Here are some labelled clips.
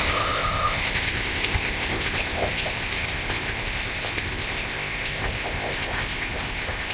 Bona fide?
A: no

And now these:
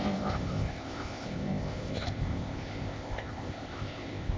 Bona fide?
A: no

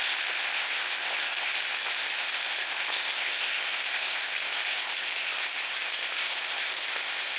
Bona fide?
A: no